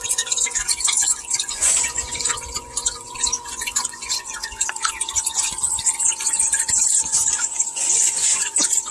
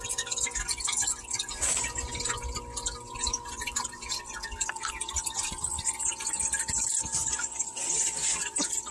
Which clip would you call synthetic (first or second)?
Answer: first